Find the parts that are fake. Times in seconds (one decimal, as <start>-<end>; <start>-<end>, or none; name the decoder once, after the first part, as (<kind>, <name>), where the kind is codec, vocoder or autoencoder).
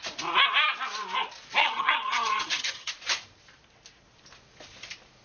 1.6-2.9 (vocoder, HiFi-GAN)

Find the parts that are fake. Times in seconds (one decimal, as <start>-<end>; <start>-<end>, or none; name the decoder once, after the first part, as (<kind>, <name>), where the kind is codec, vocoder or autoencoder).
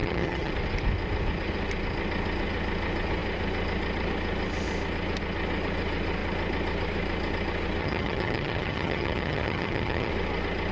0.0-0.5 (vocoder, HiFi-GAN); 7.8-10.1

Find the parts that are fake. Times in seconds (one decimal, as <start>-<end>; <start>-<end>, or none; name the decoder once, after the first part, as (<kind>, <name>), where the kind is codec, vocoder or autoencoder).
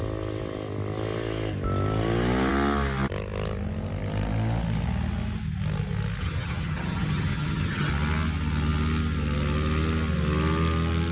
6.2-7.9 (vocoder, HiFi-GAN)